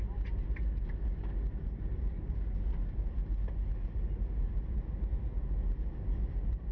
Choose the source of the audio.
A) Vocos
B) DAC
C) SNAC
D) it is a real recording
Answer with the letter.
D